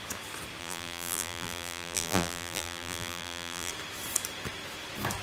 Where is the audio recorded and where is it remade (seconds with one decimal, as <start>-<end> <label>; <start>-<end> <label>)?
0.0-0.6 recorded; 0.6-3.7 remade; 3.7-5.2 recorded